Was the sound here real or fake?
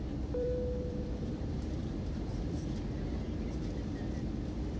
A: fake